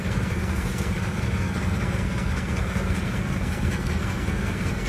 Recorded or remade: remade